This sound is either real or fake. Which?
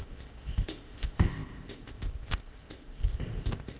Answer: fake